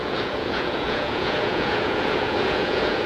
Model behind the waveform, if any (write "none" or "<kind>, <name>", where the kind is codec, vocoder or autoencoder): vocoder, Vocos